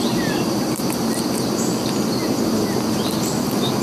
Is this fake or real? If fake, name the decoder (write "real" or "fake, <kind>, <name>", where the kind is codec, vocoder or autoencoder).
real